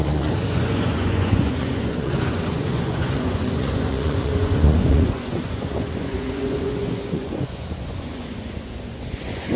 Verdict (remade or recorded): remade